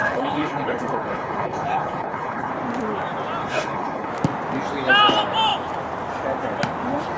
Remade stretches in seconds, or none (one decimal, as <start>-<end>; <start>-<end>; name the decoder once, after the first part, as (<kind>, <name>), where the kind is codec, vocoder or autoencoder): 0.0-2.5 (codec, HILCodec); 3.4-4.1

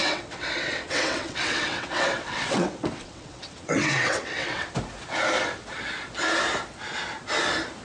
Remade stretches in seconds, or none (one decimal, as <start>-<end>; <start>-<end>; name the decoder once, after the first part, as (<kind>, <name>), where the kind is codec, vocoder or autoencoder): 0.0-4.7 (vocoder, WaveNeXt)

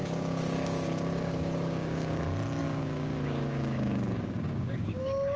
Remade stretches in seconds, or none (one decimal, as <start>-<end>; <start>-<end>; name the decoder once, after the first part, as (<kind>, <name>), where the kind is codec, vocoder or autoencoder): 0.0-2.2 (codec, DAC); 2.6-5.4

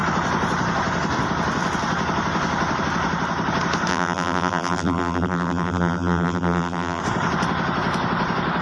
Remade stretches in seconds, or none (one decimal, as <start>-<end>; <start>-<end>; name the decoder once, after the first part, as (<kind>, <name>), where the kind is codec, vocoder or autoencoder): 3.9-7.0 (vocoder, BigVGAN v2)

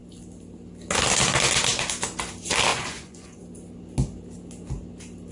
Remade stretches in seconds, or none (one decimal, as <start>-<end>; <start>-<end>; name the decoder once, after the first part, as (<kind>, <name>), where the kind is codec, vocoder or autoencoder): 2.7-3.4 (vocoder, Vocos)

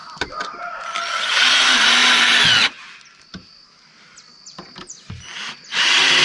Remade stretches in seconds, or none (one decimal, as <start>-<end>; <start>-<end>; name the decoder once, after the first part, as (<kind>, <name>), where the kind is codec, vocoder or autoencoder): 1.5-2.0 (vocoder, BigVGAN v2); 5.7-6.2

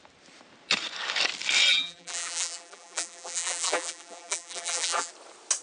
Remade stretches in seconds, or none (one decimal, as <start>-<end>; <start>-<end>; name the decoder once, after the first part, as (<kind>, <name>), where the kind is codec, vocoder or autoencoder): 1.7-5.1 (vocoder, BigVGAN v2)

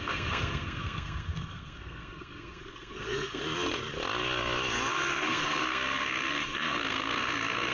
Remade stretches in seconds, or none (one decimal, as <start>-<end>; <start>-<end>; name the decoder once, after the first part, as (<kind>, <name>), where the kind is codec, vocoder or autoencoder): 0.0-3.4 (codec, SNAC); 4.9-7.7